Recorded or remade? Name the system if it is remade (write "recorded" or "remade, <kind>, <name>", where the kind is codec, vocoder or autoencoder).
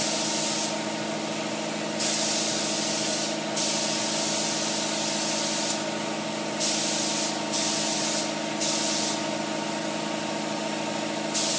recorded